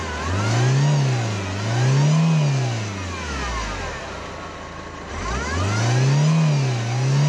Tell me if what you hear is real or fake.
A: real